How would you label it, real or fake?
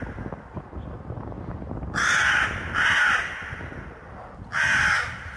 real